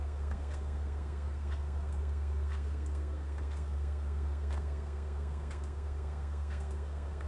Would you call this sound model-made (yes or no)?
yes